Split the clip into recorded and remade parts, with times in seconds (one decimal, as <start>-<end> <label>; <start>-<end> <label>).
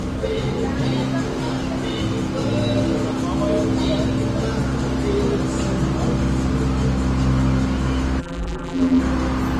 0.0-8.2 recorded; 8.2-9.0 remade; 9.0-9.6 recorded